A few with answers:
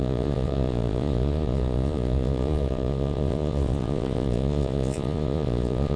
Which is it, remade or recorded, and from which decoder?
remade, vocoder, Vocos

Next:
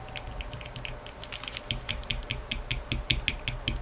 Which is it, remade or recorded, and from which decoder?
recorded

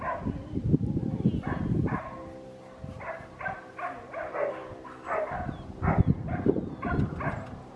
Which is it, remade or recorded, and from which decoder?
recorded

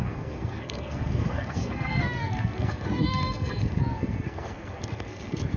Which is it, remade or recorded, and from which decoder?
remade, codec, SNAC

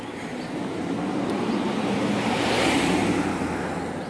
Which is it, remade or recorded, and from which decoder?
recorded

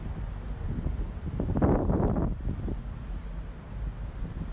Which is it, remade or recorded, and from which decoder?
recorded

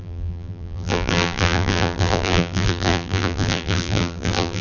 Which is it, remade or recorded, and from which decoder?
remade, vocoder, BigVGAN v2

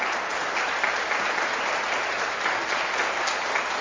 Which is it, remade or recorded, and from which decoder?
recorded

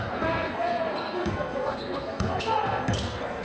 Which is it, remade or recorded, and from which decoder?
remade, codec, SNAC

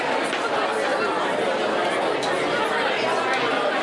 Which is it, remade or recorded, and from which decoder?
recorded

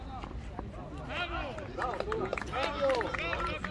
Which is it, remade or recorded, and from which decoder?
recorded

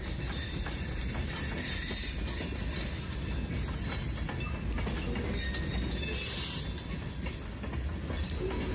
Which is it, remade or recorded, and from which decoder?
recorded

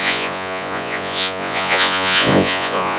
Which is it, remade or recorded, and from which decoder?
remade, vocoder, Vocos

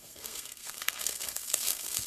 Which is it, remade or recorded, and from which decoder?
remade, codec, SNAC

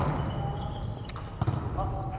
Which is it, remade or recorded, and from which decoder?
recorded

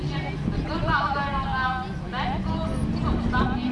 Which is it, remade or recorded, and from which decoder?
recorded